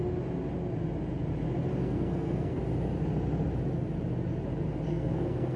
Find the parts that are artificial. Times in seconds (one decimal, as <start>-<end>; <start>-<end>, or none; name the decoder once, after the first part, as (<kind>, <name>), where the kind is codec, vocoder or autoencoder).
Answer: 1.8-2.6 (codec, SNAC); 4.9-5.6